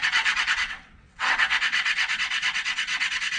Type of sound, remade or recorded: remade